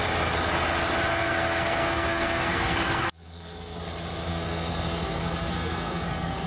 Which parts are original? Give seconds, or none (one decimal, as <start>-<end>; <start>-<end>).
0.0-1.1; 3.8-4.3